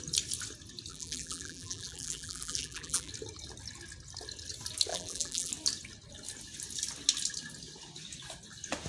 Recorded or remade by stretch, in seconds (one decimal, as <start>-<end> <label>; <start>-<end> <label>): 0.0-0.9 recorded; 0.9-3.1 remade; 3.1-4.9 recorded; 4.9-5.5 remade; 5.5-8.9 recorded

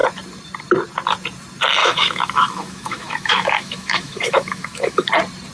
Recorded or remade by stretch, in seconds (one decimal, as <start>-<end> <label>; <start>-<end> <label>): 0.0-1.8 recorded; 1.8-5.1 remade; 5.1-5.5 recorded

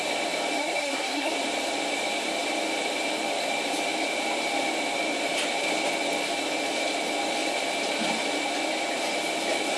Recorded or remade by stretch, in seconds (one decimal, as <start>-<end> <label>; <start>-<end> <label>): 0.0-0.6 recorded; 0.6-1.3 remade; 1.3-9.8 recorded

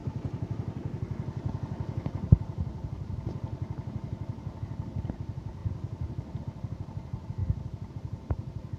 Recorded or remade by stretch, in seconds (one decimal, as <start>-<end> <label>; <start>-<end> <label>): 0.0-5.1 recorded; 5.1-5.6 remade; 5.6-6.4 recorded; 6.4-7.4 remade; 7.4-7.9 recorded; 7.9-8.8 remade